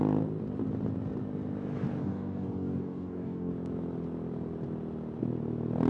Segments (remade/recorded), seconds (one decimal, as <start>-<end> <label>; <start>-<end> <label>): 0.0-2.0 recorded; 2.0-3.5 remade; 3.5-5.9 recorded